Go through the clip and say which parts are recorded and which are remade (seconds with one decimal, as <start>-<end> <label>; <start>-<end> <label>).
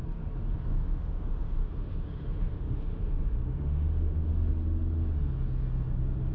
0.0-0.7 recorded; 0.7-4.5 remade; 4.5-6.3 recorded